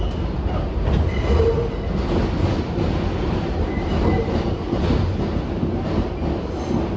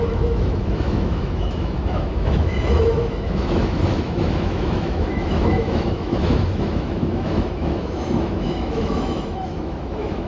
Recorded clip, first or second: first